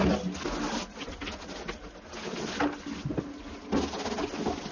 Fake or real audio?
real